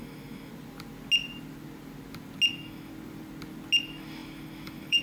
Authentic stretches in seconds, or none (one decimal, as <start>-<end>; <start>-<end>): 0.5-2.5; 2.9-3.8